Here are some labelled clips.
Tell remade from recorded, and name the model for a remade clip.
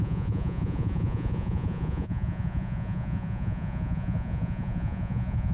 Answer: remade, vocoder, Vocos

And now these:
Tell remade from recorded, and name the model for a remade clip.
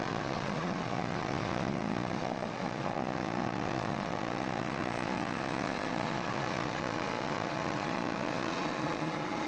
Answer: remade, vocoder, Vocos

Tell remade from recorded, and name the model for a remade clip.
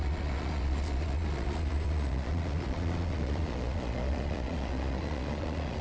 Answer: remade, vocoder, Vocos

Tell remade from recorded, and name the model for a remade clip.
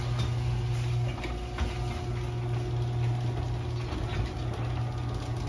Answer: recorded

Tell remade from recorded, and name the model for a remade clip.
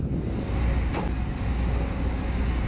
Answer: recorded